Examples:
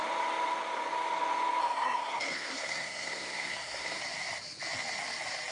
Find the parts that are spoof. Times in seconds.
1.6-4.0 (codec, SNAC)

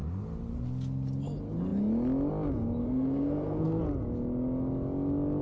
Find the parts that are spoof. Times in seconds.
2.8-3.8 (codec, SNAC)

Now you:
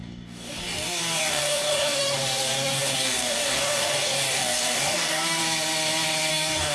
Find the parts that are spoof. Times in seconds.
0.0-5.4 (codec, DAC); 6.3-6.7